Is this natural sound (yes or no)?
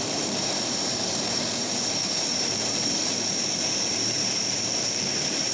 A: no